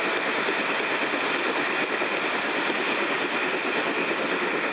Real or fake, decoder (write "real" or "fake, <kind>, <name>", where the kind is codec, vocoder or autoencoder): real